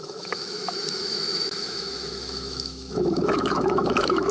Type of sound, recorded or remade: remade